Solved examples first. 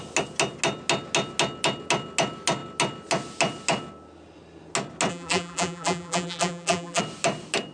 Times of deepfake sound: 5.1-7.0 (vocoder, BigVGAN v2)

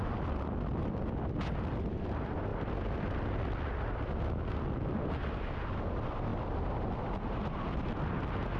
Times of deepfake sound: 6.3-7.9 (vocoder, BigVGAN v2)

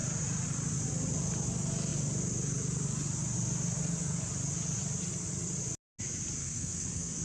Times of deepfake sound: 6.4-7.2 (codec, SNAC)